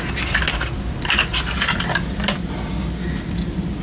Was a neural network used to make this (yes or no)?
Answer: no